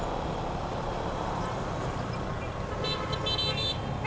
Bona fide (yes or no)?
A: yes